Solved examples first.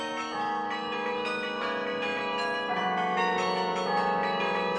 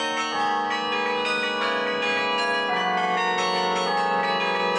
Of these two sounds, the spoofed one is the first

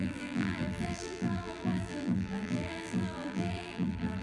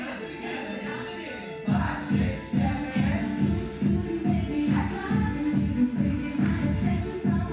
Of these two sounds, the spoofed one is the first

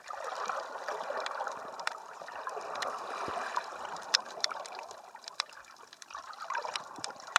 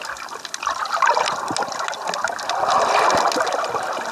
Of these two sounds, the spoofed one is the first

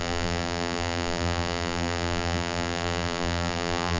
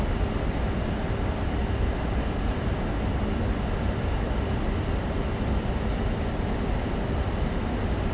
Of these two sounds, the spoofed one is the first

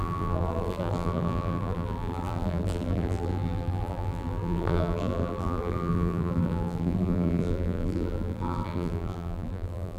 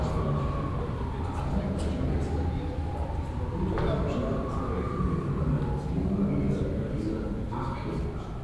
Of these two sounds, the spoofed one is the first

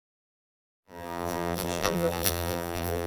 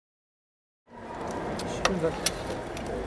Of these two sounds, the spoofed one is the first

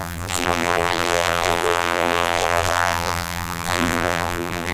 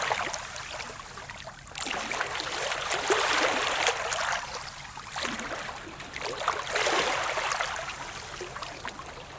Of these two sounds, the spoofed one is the first